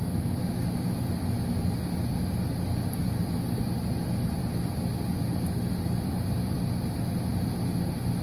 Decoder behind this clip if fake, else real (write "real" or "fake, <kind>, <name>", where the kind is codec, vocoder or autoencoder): real